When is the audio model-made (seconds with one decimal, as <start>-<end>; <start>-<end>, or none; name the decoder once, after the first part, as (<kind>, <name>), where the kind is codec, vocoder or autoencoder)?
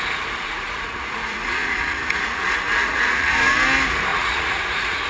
0.4-3.5 (vocoder, Vocos); 4.1-5.1